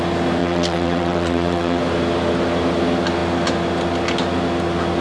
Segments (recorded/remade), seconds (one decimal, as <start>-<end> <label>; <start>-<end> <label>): 0.0-0.4 recorded; 0.4-1.8 remade; 1.8-5.0 recorded